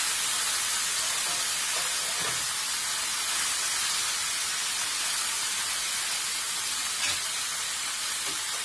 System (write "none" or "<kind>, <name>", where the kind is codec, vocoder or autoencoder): none